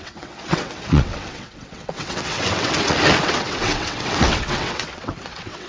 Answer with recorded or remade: remade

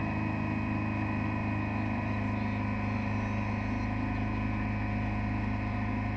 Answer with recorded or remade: recorded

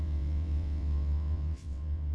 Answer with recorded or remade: remade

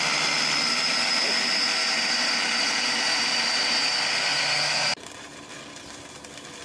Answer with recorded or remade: recorded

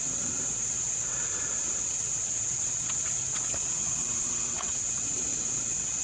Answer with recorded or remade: remade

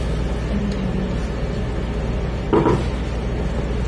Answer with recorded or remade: recorded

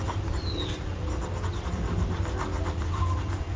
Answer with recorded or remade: recorded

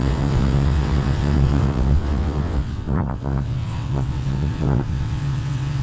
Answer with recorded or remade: remade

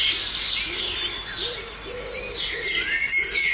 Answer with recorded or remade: recorded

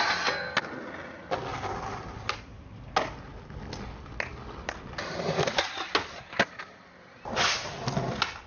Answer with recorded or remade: recorded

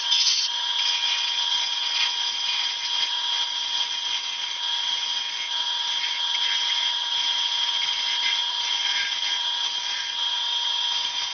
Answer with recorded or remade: remade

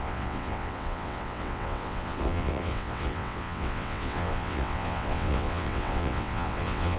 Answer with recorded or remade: remade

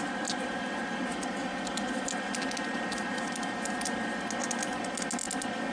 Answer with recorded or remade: recorded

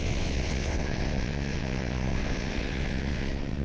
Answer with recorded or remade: remade